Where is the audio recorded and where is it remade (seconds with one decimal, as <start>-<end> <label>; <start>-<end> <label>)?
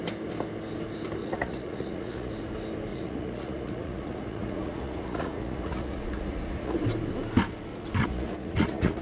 0.0-1.2 recorded; 1.2-2.3 remade; 2.3-2.9 recorded; 2.9-6.8 remade; 6.8-7.7 recorded; 7.7-9.0 remade